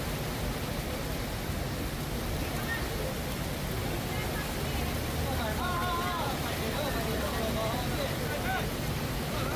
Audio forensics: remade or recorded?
recorded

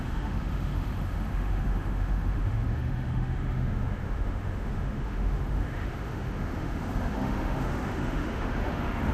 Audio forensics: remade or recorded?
remade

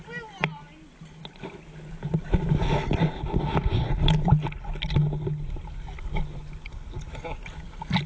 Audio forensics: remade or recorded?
recorded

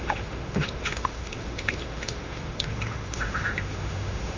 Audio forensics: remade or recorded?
remade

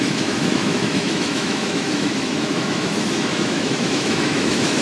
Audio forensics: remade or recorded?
remade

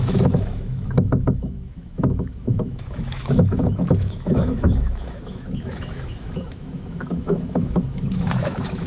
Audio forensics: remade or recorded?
remade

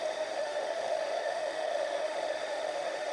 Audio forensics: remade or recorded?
remade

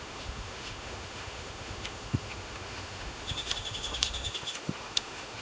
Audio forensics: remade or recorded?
remade